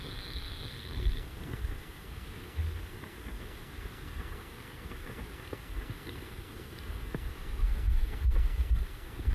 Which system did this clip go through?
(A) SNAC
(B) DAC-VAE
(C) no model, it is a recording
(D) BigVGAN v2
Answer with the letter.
A